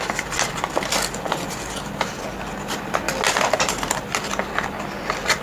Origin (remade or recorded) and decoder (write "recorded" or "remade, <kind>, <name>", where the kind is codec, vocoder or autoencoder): recorded